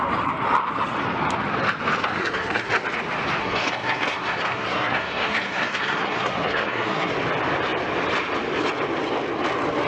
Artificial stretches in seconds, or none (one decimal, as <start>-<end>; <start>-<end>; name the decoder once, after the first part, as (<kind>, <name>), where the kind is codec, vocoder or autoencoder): 2.0-2.7 (codec, SNAC); 3.4-7.1